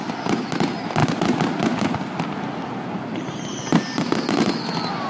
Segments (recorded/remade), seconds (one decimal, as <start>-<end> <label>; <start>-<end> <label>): 0.0-5.1 recorded